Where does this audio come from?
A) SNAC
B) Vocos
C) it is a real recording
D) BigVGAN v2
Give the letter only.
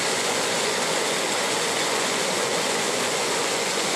B